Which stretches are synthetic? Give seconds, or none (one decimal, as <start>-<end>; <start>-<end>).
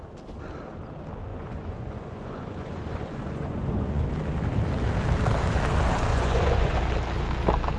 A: 1.3-4.0; 6.1-6.8